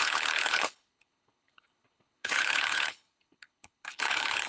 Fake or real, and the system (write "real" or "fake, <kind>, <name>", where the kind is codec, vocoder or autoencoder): fake, codec, HILCodec